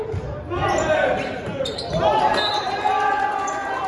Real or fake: real